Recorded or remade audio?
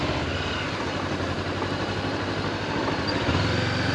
recorded